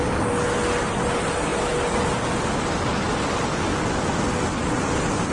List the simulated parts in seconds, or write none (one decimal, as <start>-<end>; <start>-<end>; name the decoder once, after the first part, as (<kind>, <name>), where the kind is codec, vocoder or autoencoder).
none